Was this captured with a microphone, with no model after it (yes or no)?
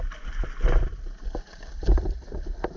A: no